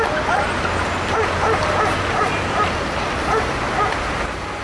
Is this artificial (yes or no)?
no